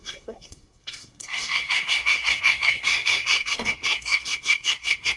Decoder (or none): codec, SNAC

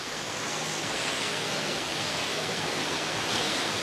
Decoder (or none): codec, SNAC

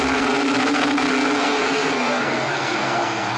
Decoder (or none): codec, SNAC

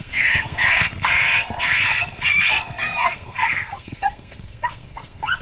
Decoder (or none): codec, SNAC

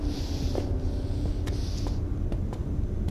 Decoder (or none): none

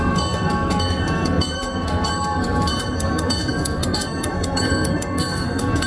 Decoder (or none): codec, SNAC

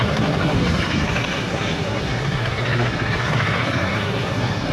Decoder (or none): codec, SNAC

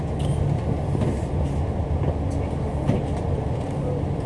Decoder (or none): none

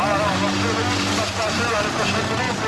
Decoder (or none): none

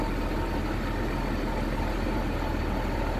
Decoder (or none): none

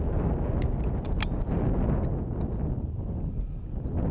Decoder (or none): none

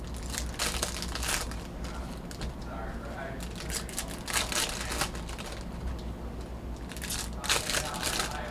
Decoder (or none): none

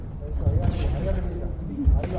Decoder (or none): none